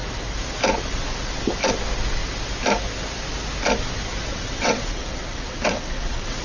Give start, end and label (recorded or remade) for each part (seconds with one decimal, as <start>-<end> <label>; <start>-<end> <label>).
0.0-4.3 recorded; 4.3-6.4 remade